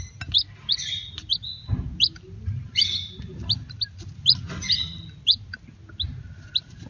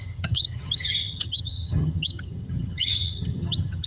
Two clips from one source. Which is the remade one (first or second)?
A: second